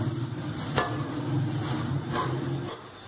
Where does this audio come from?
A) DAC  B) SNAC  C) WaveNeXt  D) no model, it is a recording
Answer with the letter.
D